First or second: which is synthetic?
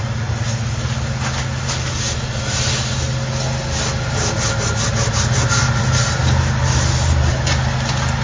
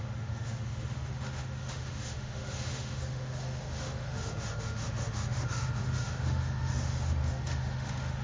second